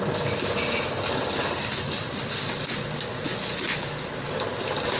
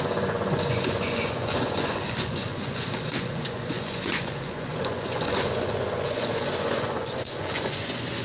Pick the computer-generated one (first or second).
second